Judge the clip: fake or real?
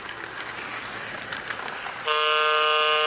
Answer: real